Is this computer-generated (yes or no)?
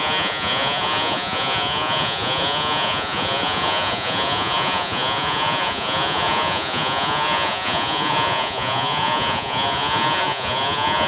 yes